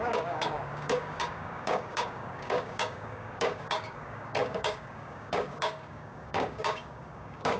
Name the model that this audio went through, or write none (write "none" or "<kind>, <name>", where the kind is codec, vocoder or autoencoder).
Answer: codec, DAC